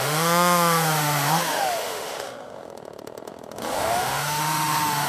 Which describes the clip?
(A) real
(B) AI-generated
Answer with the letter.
B